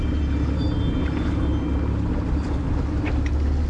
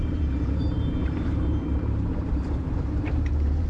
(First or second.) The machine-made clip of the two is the second